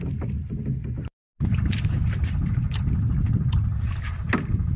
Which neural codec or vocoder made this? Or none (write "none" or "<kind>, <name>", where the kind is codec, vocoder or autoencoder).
none